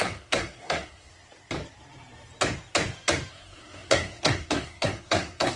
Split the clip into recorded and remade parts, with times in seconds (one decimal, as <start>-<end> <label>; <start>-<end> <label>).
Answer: 0.0-1.1 remade; 1.1-3.3 recorded; 3.3-5.6 remade